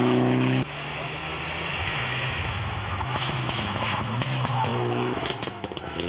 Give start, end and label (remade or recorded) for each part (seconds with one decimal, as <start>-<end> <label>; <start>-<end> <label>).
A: 0.0-1.3 remade; 1.3-1.8 recorded; 1.8-6.1 remade